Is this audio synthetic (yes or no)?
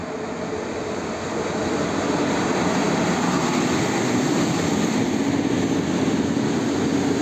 no